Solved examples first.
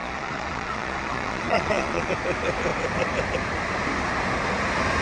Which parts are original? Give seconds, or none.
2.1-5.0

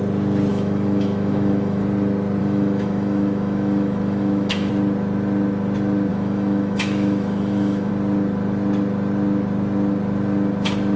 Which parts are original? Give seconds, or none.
0.0-0.5; 1.8-2.4; 4.7-6.1; 7.9-11.0

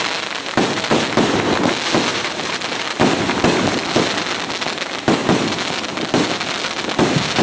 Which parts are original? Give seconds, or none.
0.0-2.1; 2.8-7.4

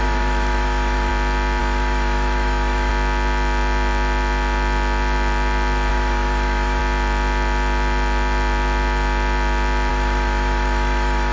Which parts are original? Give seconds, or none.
1.1-1.6; 2.9-5.9; 6.8-9.9

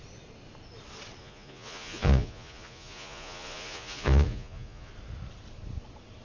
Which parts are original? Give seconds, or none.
0.0-1.2; 4.9-6.2